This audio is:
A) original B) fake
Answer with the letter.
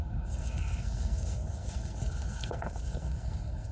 B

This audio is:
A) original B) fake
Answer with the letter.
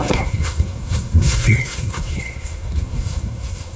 B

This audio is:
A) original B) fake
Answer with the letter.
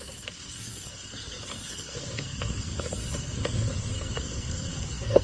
B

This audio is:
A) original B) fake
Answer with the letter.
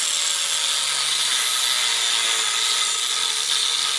A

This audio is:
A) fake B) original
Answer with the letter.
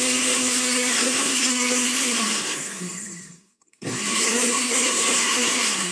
A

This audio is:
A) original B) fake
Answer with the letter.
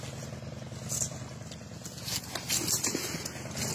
A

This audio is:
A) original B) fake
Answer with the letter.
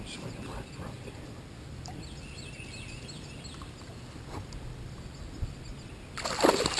A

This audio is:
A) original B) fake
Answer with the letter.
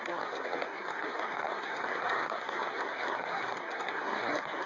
B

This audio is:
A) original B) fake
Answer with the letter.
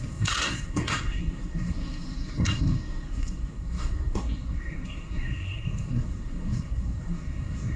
B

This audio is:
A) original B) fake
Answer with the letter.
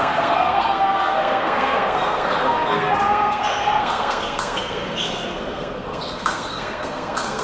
B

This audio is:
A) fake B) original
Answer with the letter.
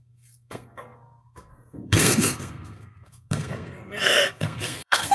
A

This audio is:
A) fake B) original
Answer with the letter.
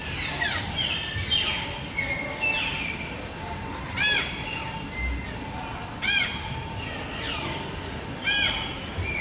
B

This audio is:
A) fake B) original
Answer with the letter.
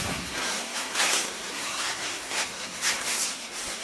A